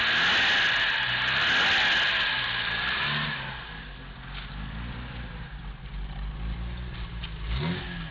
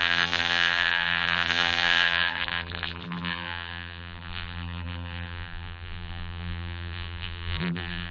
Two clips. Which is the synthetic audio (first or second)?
second